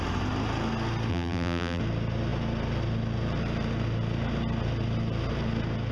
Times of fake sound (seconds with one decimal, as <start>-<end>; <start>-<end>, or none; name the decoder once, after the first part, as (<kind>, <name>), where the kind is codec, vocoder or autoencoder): 1.1-1.8 (vocoder, BigVGAN v2)